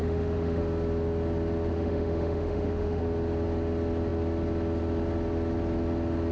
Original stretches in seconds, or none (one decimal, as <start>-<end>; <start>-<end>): 0.6-1.7; 3.0-6.3